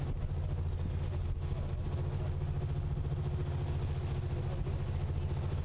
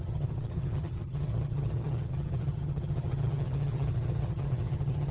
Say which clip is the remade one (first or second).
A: second